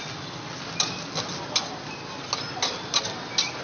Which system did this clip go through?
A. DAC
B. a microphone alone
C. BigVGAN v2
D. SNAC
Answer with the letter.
B